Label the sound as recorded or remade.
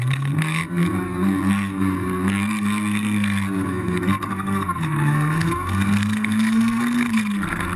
remade